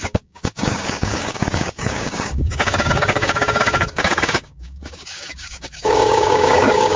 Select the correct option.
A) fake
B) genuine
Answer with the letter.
A